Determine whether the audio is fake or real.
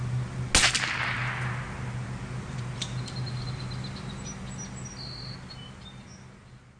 real